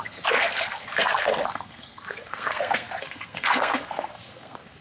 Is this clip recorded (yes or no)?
no